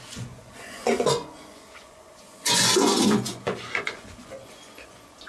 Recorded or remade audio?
remade